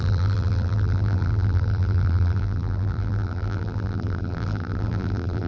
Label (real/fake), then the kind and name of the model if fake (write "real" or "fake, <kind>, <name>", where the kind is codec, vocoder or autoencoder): fake, vocoder, BigVGAN v2